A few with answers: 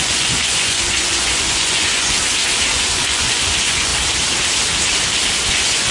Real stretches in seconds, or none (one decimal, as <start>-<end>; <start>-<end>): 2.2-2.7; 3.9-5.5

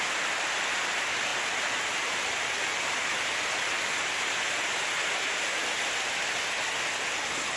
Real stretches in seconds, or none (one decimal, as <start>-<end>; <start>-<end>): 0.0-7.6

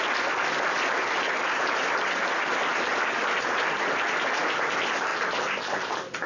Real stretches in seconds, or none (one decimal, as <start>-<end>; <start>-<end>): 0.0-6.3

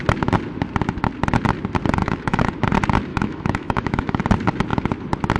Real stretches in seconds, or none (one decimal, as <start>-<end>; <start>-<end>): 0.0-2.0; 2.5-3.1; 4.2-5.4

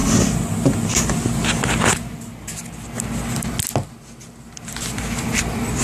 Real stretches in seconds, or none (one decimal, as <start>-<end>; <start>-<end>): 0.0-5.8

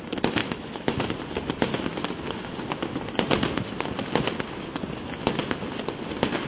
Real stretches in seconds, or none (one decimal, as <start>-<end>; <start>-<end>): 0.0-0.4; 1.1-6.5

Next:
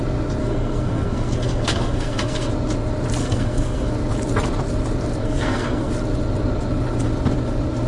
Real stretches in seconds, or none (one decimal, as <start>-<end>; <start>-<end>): 0.0-0.4; 2.5-3.2; 3.9-5.2; 5.9-7.9

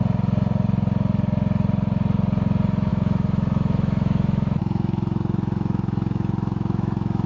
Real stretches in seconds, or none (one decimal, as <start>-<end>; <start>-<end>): 0.0-2.9